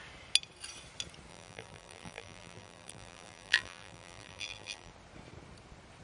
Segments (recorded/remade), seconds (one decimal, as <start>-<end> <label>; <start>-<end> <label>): 0.0-1.3 recorded; 1.3-4.9 remade; 4.9-6.0 recorded